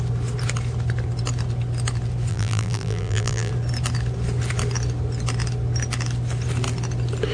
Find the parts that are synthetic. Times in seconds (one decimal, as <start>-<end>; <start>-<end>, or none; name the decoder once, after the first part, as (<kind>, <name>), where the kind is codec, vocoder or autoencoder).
2.3-3.5 (vocoder, BigVGAN v2)